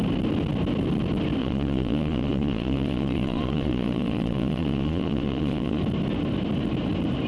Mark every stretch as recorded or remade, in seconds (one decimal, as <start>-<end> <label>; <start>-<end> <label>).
0.0-1.4 recorded; 1.4-5.8 remade; 5.8-7.3 recorded